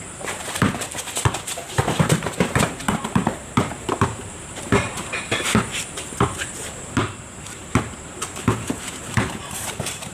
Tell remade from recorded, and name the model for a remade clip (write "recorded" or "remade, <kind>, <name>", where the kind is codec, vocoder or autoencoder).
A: remade, vocoder, BigVGAN v2